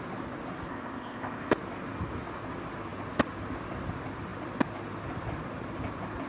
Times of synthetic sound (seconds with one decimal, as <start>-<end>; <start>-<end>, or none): 0.7-1.5